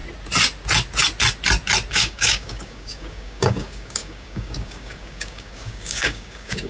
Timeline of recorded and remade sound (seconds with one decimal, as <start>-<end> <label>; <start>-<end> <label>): 0.0-1.9 recorded; 1.9-6.7 remade